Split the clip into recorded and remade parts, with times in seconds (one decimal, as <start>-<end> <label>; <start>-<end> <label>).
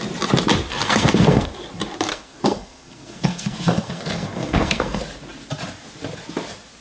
0.0-0.7 recorded; 0.7-1.5 remade; 1.5-2.1 recorded; 2.1-5.0 remade; 5.0-6.8 recorded